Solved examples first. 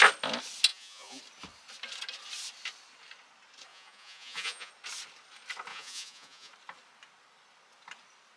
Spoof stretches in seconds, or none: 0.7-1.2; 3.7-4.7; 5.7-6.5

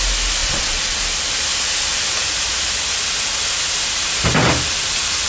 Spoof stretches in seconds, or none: 0.4-1.0

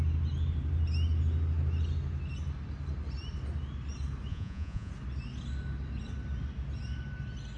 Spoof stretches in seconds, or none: 4.3-4.9

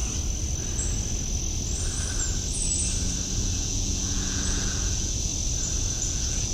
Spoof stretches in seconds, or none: 3.4-5.3; 5.9-6.5